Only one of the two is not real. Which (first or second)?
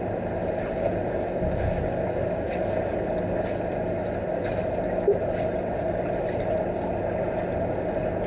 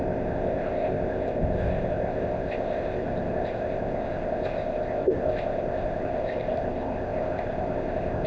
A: second